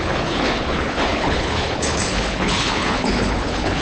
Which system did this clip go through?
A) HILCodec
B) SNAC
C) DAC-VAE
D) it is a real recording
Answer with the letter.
A